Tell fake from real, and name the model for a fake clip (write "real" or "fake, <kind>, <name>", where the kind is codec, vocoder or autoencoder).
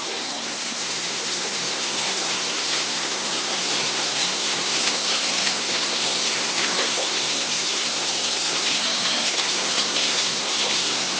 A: fake, codec, SNAC